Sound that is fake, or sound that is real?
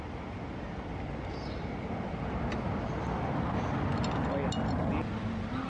real